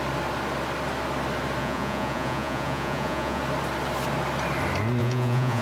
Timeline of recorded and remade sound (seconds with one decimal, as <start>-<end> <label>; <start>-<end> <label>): 0.0-1.6 recorded; 1.6-3.4 remade; 3.4-5.0 recorded; 5.0-5.6 remade